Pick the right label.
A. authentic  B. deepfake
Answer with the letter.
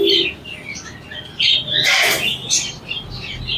A